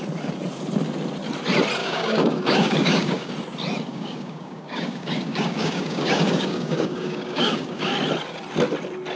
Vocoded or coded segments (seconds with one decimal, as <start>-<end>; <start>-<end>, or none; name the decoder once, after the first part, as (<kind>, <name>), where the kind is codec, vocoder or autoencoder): 1.8-3.3 (codec, DAC); 3.9-7.9

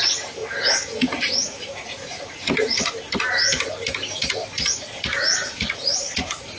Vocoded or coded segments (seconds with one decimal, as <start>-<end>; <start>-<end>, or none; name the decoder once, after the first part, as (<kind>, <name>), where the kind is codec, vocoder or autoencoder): 0.4-2.9 (vocoder, Vocos); 5.1-6.6

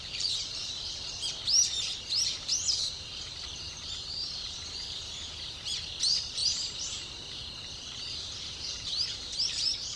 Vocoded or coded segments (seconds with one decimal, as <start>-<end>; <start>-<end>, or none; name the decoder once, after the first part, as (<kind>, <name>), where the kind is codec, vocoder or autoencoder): 0.0-1.4 (vocoder, BigVGAN v2); 2.2-10.0

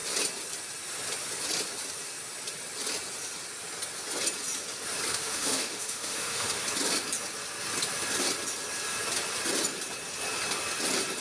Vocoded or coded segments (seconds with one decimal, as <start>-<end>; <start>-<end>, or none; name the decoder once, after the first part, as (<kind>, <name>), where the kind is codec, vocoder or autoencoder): 5.1-6.6 (autoencoder, DAC-VAE)